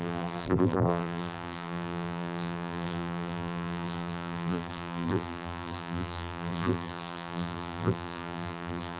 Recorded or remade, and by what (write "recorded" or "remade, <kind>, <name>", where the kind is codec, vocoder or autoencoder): remade, vocoder, BigVGAN v2